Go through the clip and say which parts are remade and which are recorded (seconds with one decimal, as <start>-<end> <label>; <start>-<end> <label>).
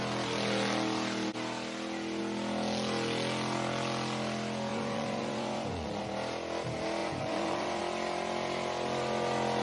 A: 0.0-4.7 recorded; 4.7-6.0 remade; 6.0-7.0 recorded; 7.0-7.8 remade; 7.8-9.6 recorded